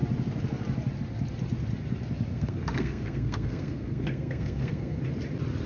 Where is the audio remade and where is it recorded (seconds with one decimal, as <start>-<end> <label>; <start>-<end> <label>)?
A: 0.0-2.3 recorded; 2.3-5.0 remade; 5.0-5.7 recorded